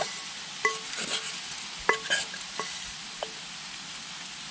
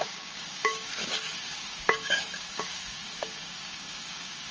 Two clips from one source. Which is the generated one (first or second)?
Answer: second